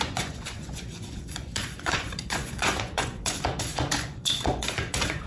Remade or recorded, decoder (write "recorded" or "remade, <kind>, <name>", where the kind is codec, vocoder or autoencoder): remade, vocoder, Vocos